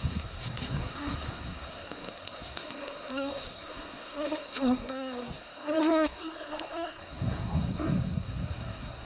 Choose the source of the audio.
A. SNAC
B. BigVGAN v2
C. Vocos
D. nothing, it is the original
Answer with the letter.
A